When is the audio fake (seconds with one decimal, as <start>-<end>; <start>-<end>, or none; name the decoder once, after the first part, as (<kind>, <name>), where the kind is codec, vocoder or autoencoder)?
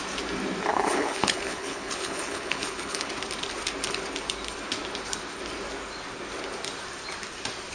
0.7-3.1 (codec, HILCodec)